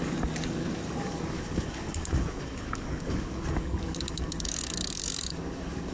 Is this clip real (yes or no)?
no